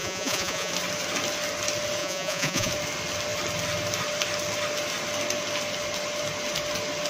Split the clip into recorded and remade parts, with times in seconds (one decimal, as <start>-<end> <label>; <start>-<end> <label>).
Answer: 0.0-0.7 remade; 0.7-2.0 recorded; 2.0-2.7 remade; 2.7-7.1 recorded